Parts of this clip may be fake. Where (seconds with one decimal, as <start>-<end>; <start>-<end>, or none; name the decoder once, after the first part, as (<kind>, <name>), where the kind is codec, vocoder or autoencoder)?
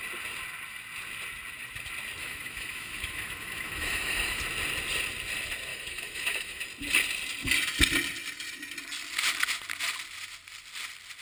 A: 2.2-4.4 (autoencoder, DAC-VAE); 5.7-6.6